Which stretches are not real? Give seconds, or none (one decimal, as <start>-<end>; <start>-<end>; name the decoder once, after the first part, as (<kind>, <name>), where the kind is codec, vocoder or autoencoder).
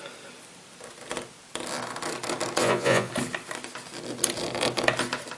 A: 2.6-3.1 (vocoder, Vocos)